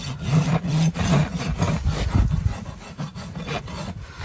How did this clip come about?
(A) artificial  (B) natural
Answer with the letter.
B